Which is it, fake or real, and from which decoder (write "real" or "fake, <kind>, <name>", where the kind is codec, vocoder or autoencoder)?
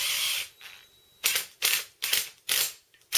real